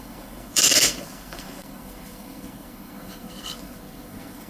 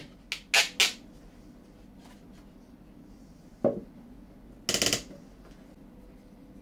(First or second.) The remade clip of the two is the first